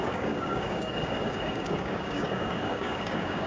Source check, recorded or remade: remade